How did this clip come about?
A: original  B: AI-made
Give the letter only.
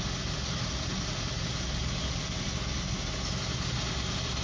A